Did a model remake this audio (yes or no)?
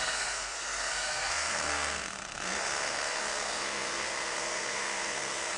yes